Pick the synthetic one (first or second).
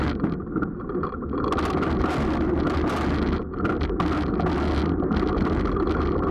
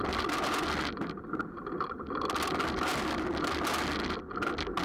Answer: second